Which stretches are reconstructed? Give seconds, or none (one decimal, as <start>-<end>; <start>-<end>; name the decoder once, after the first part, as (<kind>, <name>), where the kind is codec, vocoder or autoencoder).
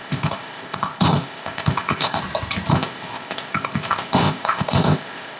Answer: 0.0-2.2 (codec, ZipCodec); 2.7-5.4